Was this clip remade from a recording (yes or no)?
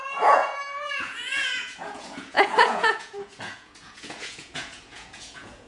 yes